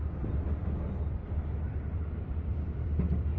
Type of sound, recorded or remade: remade